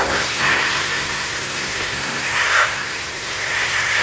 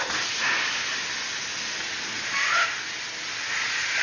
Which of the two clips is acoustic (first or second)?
second